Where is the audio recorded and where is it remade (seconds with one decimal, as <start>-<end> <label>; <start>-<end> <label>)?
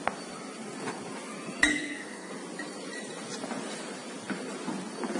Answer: 0.0-1.7 recorded; 1.7-2.3 remade; 2.3-5.2 recorded